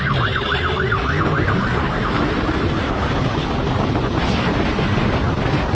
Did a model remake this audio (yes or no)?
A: no